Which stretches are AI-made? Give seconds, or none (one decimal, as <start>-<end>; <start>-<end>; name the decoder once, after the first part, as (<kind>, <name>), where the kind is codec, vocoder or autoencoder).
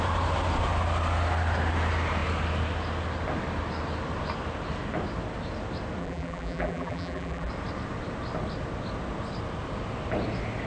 6.0-7.5 (vocoder, BigVGAN v2)